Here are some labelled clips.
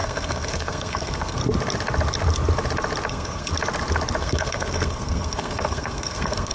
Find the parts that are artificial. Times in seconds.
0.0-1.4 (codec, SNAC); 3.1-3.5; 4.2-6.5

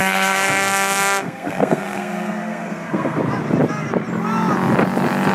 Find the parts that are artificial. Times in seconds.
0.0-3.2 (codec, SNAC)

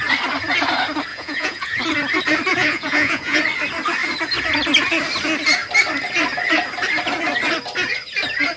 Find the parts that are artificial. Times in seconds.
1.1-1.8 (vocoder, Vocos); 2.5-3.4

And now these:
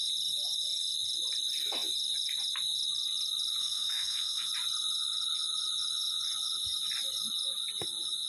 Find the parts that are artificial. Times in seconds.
3.6-4.5 (codec, SNAC)